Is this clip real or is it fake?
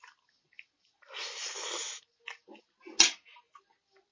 real